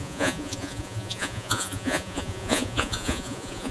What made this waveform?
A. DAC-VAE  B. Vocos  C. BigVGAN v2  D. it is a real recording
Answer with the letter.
B